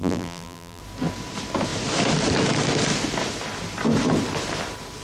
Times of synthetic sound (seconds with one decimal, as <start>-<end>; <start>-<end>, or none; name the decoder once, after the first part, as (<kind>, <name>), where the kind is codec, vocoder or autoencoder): 0.0-0.8 (vocoder, BigVGAN v2)